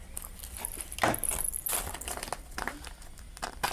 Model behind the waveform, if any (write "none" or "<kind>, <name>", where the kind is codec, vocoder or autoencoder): none